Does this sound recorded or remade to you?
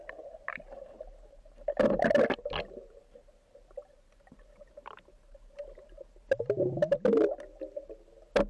recorded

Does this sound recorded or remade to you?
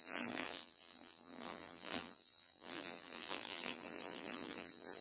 remade